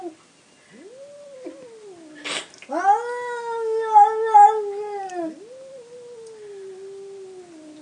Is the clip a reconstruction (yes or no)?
no